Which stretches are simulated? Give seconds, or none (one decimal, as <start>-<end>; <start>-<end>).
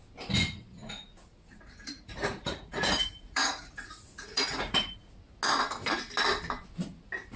0.8-5.1